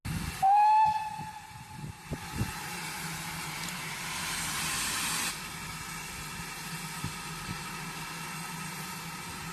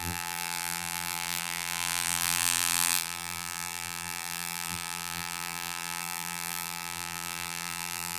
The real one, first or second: first